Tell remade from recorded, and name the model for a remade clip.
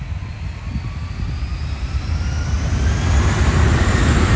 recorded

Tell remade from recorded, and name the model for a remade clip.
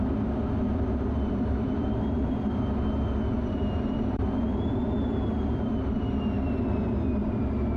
remade, vocoder, BigVGAN v2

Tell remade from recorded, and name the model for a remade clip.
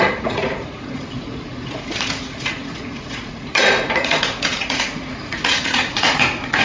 remade, vocoder, Vocos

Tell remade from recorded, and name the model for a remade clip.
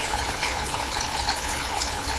remade, codec, HILCodec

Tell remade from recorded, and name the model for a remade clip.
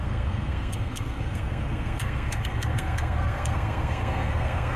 remade, codec, SNAC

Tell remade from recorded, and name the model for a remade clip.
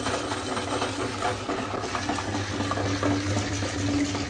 recorded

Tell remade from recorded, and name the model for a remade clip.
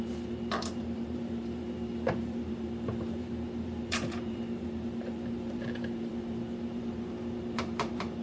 remade, vocoder, BigVGAN v2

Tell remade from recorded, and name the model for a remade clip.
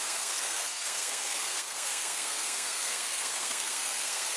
remade, codec, SNAC